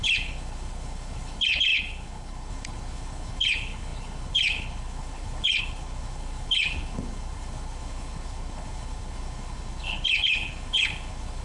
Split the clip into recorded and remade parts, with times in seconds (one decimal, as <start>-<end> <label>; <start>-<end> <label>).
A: 0.0-11.4 remade